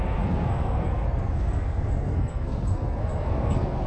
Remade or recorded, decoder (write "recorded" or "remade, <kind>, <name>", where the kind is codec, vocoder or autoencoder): remade, codec, SNAC